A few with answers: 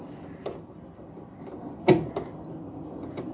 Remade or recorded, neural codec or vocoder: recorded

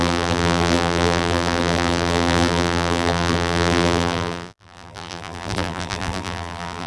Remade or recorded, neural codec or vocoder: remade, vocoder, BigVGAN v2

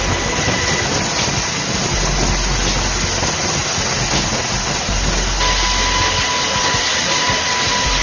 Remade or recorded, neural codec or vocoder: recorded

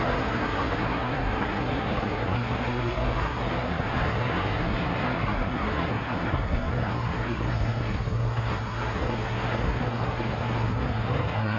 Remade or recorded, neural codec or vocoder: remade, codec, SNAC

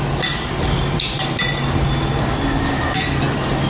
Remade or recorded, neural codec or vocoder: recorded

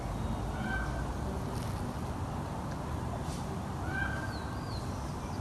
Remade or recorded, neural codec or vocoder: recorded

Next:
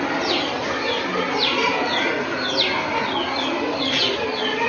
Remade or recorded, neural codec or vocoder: recorded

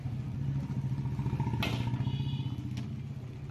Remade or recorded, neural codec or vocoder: recorded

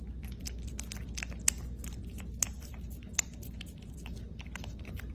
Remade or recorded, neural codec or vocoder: remade, vocoder, BigVGAN v2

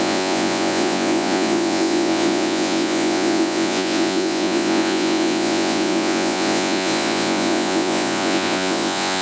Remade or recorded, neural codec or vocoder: remade, vocoder, Vocos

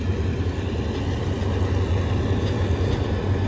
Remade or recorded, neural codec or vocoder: recorded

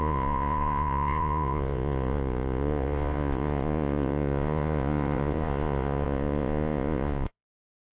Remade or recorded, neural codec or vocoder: remade, vocoder, Vocos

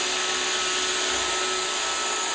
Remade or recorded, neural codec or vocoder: recorded